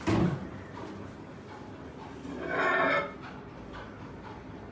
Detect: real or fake real